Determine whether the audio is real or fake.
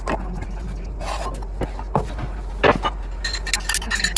real